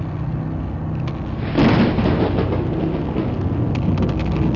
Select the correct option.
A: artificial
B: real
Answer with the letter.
B